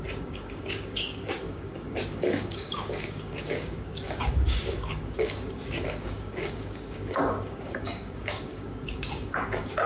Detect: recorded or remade remade